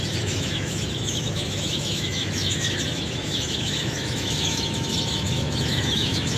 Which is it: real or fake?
fake